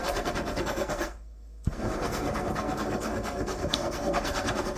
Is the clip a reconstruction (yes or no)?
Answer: yes